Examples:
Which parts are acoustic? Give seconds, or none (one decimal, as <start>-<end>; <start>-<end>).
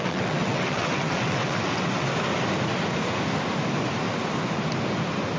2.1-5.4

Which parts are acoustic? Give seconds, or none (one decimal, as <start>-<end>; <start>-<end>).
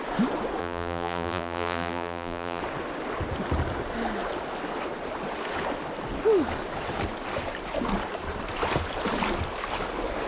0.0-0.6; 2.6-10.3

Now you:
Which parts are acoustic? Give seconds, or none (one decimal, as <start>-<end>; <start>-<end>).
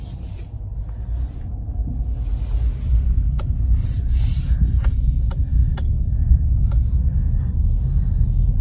0.0-8.6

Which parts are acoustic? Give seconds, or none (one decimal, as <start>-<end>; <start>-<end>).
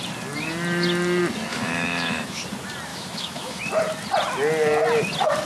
0.0-1.5; 2.4-2.9; 3.6-5.5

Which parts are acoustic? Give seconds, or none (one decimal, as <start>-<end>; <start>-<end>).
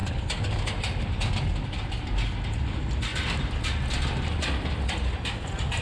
0.0-5.8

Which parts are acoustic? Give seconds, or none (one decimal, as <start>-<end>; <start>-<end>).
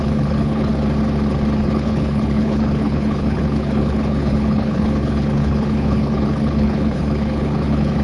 0.7-1.6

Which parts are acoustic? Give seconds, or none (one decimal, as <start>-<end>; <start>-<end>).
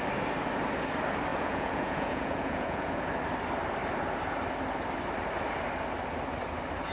0.0-1.3; 3.1-6.9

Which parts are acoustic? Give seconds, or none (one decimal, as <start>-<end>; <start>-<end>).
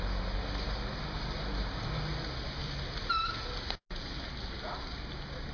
0.0-5.5